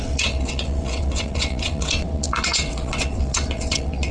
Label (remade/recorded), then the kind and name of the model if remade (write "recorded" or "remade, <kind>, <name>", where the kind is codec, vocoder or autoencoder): remade, vocoder, WaveNeXt